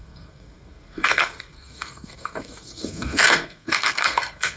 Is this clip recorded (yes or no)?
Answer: no